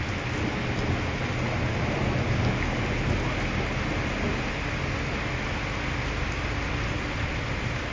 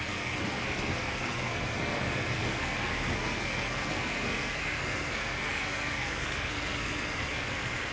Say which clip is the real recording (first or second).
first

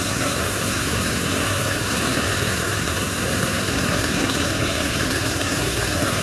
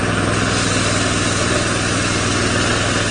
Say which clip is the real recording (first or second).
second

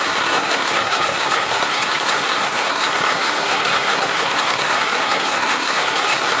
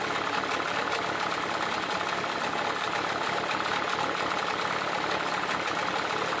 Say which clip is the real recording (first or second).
second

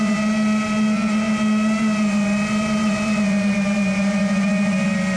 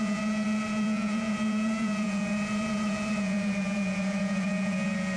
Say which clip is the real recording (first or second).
first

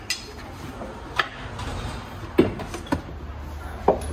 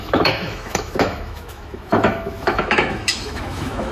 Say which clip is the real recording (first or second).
first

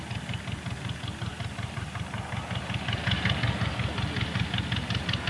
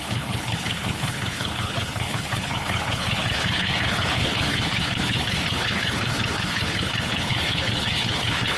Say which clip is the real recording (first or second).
first